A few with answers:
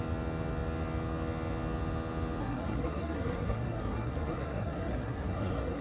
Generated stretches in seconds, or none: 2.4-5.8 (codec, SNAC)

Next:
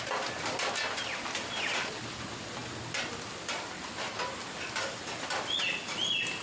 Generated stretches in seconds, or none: none